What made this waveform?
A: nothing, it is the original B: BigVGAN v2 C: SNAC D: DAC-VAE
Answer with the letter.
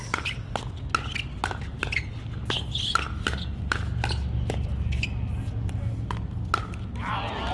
A